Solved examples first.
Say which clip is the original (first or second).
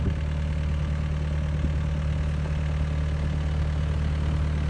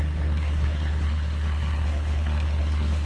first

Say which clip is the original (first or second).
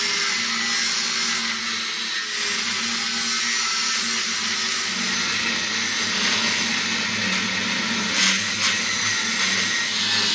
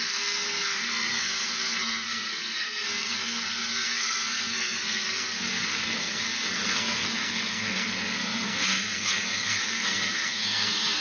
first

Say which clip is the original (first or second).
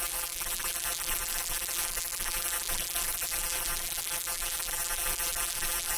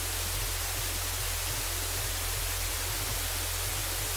second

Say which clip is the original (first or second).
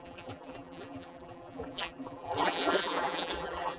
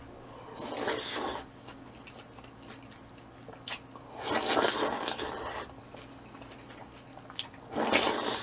second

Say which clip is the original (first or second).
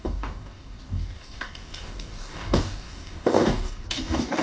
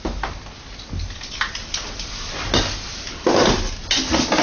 second